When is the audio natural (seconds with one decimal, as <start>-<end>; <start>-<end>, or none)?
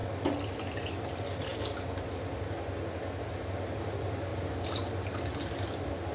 0.0-6.1